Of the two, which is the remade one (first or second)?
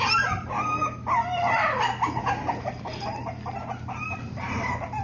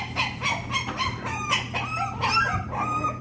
first